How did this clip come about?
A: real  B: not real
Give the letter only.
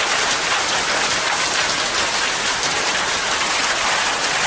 A